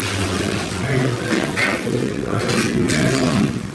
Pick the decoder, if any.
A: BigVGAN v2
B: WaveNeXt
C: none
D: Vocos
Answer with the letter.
B